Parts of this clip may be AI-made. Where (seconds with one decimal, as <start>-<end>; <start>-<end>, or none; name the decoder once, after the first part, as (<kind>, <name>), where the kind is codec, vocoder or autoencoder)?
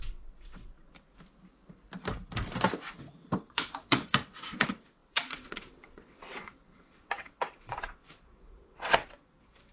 0.0-0.7 (vocoder, WaveNeXt); 3.4-9.7